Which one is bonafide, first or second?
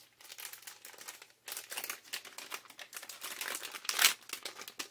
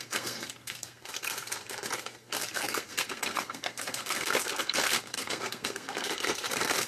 first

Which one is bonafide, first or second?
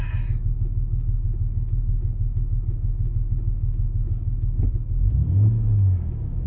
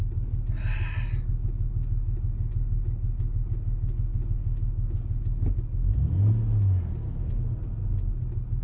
second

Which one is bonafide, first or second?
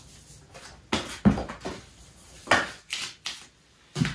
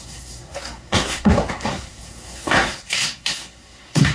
first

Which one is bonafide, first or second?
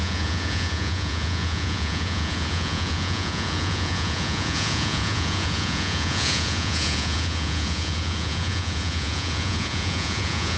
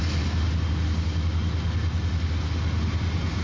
second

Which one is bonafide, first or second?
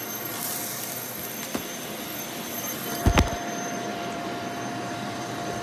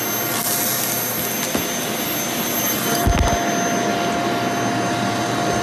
second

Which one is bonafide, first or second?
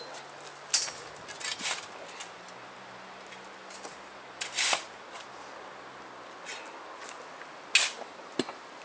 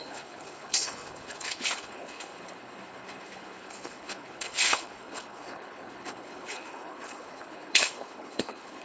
first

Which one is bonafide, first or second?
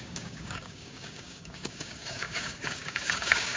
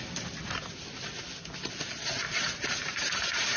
second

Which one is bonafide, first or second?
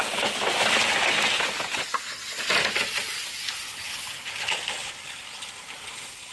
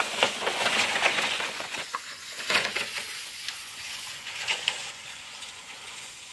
first